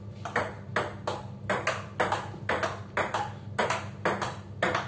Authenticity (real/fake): real